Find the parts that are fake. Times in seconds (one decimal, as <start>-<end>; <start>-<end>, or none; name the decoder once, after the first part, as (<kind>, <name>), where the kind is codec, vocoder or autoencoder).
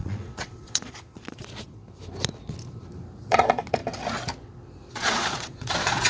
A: 0.0-1.8 (vocoder, Vocos); 3.2-3.8; 4.9-6.1